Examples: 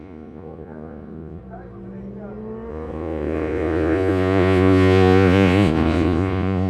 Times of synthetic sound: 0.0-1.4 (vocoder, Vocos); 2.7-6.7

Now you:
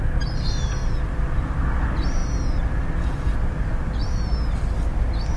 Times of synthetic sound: none

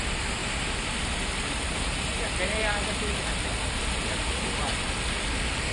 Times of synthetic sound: 0.0-0.4 (vocoder, BigVGAN v2); 1.0-2.1; 3.8-5.7